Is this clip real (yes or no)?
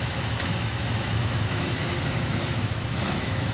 no